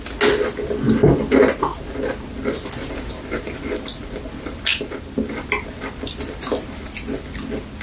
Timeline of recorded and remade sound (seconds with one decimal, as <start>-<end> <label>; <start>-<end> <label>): 0.0-7.8 recorded

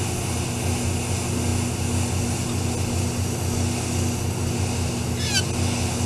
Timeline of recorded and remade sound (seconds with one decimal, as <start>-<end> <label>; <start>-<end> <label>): 0.0-6.1 recorded

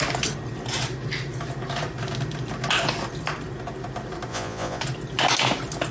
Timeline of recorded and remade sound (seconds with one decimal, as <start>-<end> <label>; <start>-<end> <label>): 0.0-4.3 recorded; 4.3-4.8 remade; 4.8-5.9 recorded